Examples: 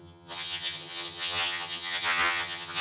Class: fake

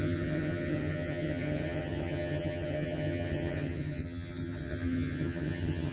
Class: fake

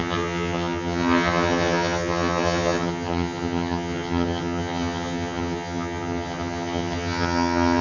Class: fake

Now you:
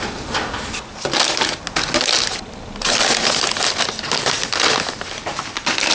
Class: real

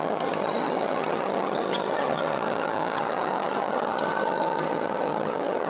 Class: fake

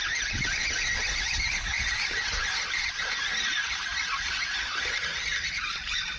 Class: real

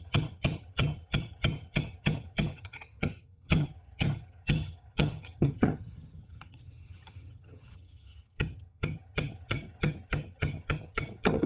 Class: fake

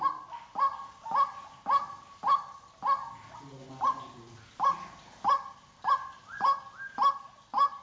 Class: real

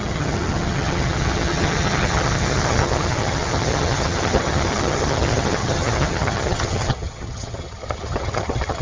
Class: fake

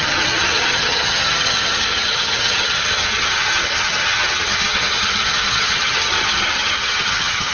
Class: fake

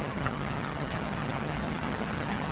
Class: fake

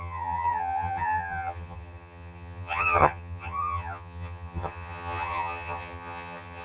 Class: fake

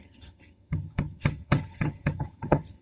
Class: fake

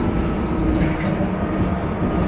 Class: real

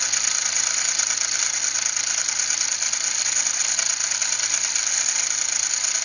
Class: real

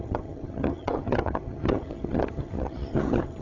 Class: fake